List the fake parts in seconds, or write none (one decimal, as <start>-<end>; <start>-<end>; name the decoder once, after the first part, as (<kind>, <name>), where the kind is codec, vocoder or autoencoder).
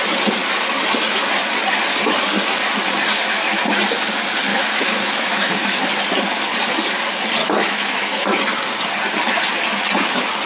4.5-5.9 (autoencoder, DAC-VAE); 7.4-8.4